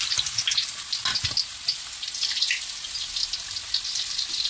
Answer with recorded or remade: recorded